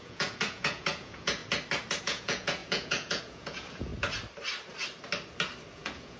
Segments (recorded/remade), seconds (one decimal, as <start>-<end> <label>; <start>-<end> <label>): 0.0-1.4 remade; 1.4-2.0 recorded; 2.0-3.9 remade; 3.9-5.7 recorded; 5.7-6.2 remade